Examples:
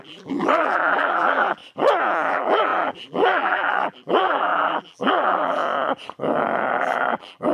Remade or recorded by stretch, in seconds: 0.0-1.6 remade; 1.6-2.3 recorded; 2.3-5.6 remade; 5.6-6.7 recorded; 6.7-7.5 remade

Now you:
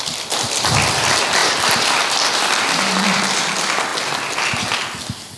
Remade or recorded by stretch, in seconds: 0.0-1.4 recorded; 1.4-3.2 remade; 3.2-5.4 recorded

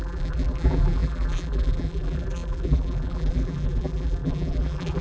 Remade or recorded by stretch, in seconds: 0.0-5.0 remade